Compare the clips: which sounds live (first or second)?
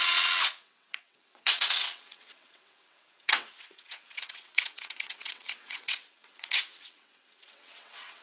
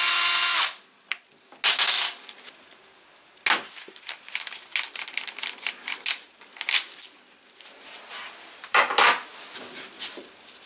second